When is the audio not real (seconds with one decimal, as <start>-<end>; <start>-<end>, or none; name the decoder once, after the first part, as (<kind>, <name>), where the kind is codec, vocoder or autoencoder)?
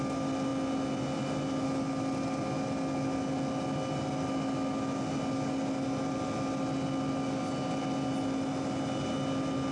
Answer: none